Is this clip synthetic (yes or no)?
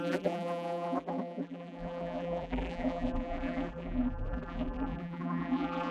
yes